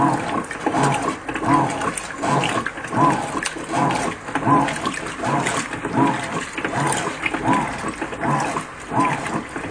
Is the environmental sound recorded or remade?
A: recorded